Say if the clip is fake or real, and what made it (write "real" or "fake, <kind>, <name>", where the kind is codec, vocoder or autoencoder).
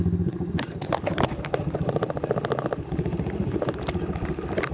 real